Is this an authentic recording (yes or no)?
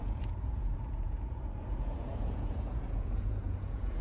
no